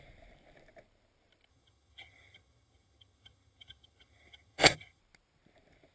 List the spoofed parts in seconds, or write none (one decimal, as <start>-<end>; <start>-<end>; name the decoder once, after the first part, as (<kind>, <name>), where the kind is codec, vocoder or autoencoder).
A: 1.5-5.0 (vocoder, HiFi-GAN)